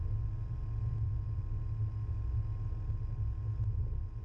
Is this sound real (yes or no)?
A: yes